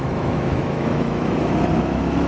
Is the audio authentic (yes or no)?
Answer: no